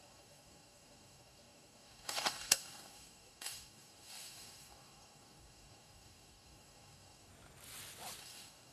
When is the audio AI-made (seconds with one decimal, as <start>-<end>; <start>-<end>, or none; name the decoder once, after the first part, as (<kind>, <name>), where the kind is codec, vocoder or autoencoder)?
0.0-7.3 (codec, DAC); 8.2-8.7